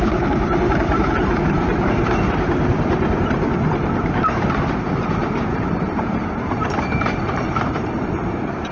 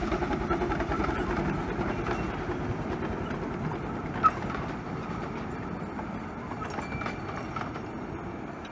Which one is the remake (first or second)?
first